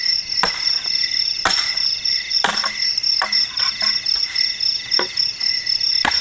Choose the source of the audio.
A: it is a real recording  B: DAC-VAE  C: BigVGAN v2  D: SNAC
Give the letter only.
A